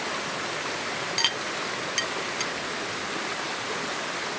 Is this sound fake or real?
real